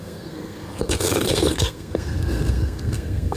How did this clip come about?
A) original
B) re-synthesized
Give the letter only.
B